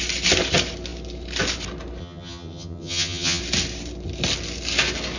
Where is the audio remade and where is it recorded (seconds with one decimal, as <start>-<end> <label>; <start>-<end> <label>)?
0.0-2.0 recorded; 2.0-3.4 remade; 3.4-5.2 recorded